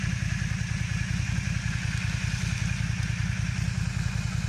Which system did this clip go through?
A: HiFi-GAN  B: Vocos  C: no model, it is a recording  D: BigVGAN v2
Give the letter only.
C